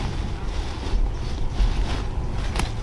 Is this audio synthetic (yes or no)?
no